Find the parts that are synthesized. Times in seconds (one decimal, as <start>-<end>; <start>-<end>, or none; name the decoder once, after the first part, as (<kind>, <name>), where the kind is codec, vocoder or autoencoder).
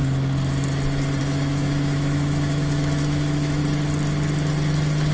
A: 1.2-3.6 (autoencoder, DAC-VAE)